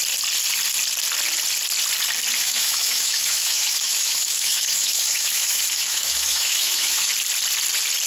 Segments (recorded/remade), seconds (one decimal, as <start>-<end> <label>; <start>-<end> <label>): 0.0-2.4 recorded; 2.4-7.1 remade; 7.1-8.1 recorded